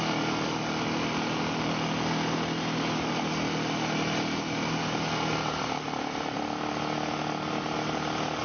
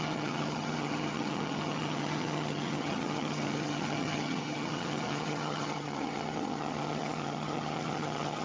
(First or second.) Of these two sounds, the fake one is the second